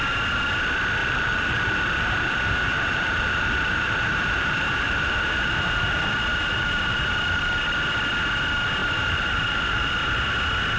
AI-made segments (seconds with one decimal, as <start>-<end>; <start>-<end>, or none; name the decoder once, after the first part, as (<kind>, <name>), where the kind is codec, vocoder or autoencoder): 1.0-6.1 (vocoder, BigVGAN v2); 6.5-7.4; 8.8-9.9